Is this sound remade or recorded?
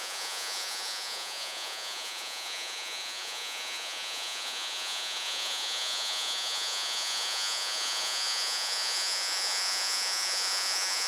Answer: remade